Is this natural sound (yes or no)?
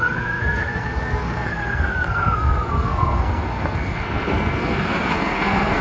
no